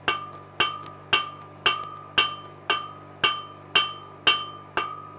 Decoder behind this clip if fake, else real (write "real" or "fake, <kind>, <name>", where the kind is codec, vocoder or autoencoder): real